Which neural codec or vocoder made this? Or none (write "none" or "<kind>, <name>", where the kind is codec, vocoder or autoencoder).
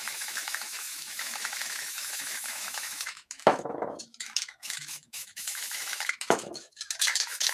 autoencoder, DAC-VAE